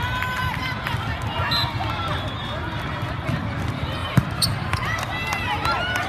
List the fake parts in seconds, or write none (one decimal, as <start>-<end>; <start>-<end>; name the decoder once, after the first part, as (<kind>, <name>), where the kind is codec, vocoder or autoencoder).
4.0-4.7 (vocoder, BigVGAN v2)